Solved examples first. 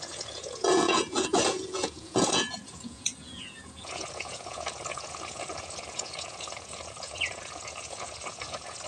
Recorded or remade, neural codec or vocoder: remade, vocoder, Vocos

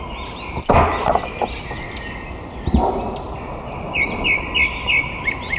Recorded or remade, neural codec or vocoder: recorded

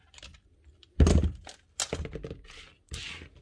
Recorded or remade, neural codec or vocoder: recorded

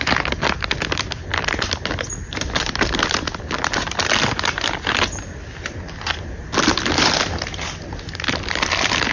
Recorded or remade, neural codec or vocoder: recorded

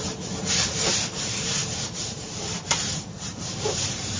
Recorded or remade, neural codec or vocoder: remade, vocoder, BigVGAN v2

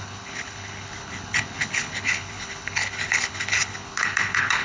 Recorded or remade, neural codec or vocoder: remade, codec, HILCodec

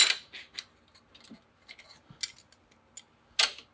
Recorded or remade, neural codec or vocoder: recorded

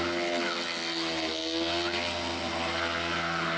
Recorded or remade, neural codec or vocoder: recorded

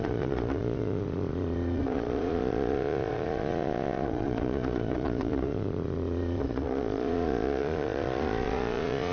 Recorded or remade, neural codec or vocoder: remade, vocoder, Vocos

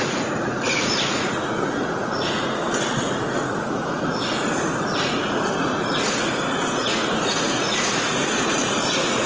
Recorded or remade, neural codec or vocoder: remade, vocoder, Vocos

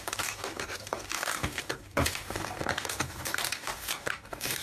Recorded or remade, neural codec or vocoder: remade, codec, DAC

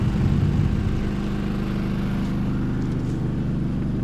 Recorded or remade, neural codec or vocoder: recorded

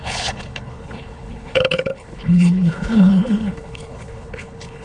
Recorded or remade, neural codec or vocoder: remade, codec, HILCodec